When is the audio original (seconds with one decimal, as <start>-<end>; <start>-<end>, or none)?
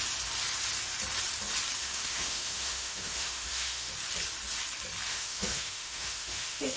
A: 0.0-1.8; 3.9-5.1